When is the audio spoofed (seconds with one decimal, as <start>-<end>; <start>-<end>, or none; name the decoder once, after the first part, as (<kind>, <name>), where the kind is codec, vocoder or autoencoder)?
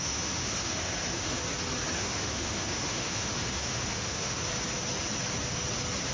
0.0-1.4 (autoencoder, DAC-VAE); 2.0-4.4